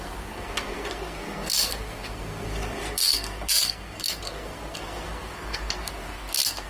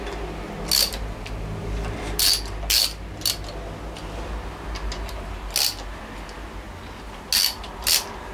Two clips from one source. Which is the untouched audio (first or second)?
second